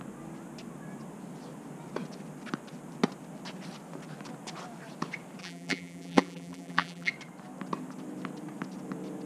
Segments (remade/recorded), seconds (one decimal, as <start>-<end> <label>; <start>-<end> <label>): 0.0-5.4 recorded; 5.4-7.1 remade; 7.1-9.3 recorded